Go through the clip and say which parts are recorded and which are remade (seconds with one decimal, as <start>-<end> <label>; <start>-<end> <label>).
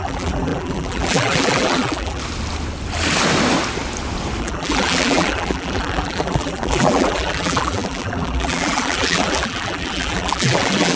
0.0-2.2 remade; 2.2-4.4 recorded; 4.4-11.0 remade